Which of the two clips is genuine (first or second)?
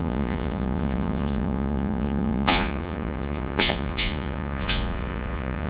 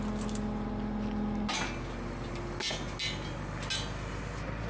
second